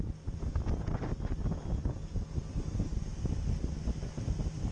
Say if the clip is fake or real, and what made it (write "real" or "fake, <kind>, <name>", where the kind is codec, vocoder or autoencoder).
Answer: real